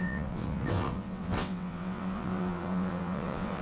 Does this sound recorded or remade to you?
remade